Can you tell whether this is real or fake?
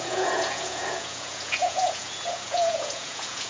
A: fake